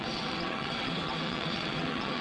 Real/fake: fake